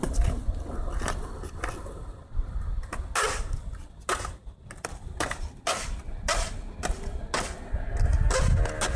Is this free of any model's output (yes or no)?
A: yes